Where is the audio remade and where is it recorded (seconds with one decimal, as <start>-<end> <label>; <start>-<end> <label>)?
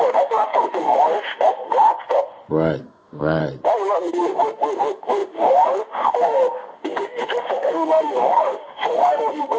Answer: 0.0-1.9 remade; 1.9-2.8 recorded; 2.8-3.4 remade; 3.4-4.1 recorded; 4.1-9.6 remade